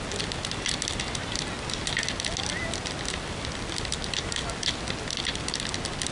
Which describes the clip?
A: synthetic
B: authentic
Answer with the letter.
B